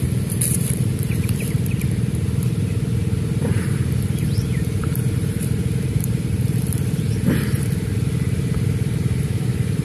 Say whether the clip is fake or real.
fake